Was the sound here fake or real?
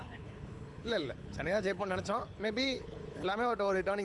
fake